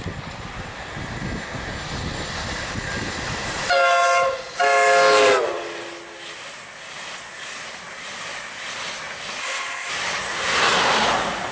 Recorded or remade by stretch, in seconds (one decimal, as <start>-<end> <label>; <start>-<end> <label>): 0.0-9.4 recorded; 9.4-9.9 remade; 9.9-11.5 recorded